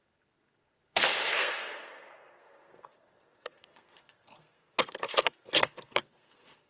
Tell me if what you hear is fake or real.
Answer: fake